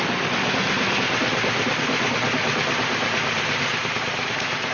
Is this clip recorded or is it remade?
recorded